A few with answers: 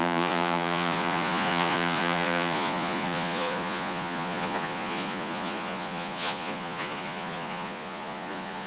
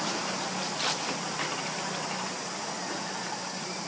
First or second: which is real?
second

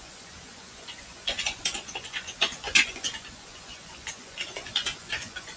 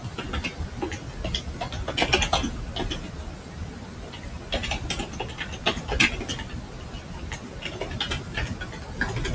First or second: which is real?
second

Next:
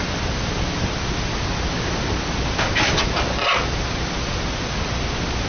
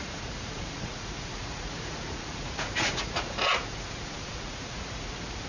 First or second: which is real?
first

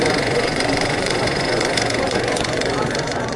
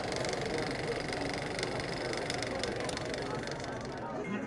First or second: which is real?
second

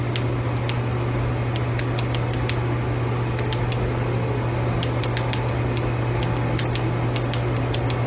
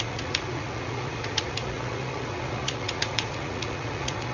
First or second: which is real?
first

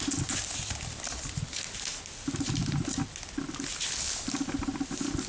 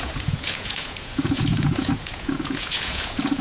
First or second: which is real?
first